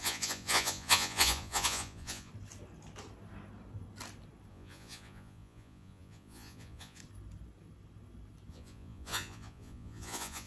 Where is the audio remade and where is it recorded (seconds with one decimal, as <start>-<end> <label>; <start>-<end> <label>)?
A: 0.0-2.3 remade; 2.3-4.5 recorded; 4.5-7.0 remade; 7.0-8.5 recorded; 8.5-10.5 remade